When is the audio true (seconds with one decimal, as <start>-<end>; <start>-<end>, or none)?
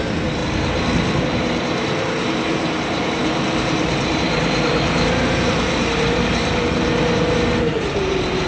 0.4-1.2